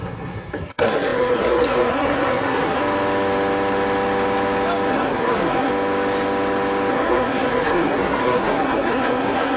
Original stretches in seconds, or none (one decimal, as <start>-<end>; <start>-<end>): 2.8-4.9; 5.7-6.9